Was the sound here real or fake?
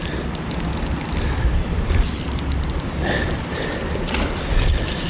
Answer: fake